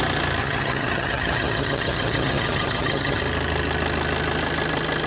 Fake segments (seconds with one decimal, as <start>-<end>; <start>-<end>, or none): 0.4-3.2